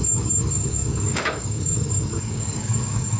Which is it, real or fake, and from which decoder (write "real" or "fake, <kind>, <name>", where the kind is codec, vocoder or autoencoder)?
fake, codec, DAC